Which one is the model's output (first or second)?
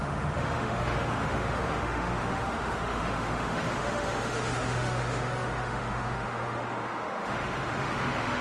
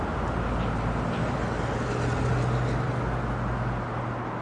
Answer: first